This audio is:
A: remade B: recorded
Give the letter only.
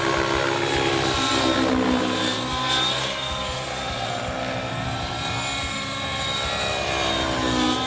B